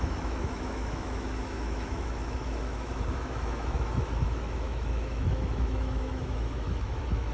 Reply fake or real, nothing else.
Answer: fake